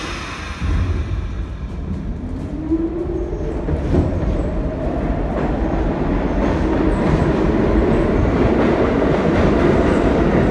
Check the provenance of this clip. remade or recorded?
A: recorded